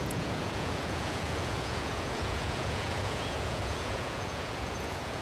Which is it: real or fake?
fake